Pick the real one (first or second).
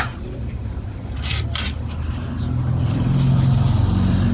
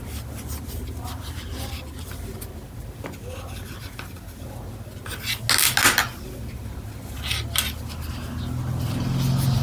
second